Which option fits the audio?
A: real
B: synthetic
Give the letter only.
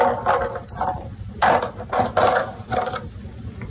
A